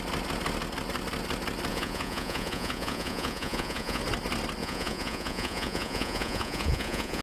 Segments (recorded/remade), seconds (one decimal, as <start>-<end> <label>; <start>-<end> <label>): 0.0-1.7 recorded; 1.7-4.0 remade; 4.0-4.6 recorded; 4.6-7.2 remade